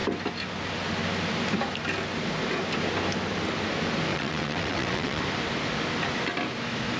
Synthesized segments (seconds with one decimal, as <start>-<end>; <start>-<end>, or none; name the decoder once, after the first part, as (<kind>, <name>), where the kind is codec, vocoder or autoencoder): 4.1-5.2 (vocoder, WaveNeXt)